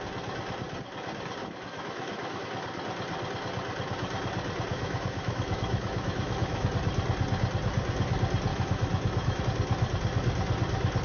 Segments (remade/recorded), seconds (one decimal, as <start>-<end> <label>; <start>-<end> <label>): 0.0-1.4 recorded; 1.4-2.4 remade; 2.4-4.7 recorded; 4.7-6.7 remade; 6.7-8.5 recorded; 8.5-9.4 remade; 9.4-11.0 recorded